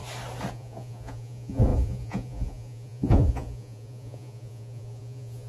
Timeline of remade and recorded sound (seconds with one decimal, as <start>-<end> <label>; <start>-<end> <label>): 0.0-0.5 recorded; 0.5-5.5 remade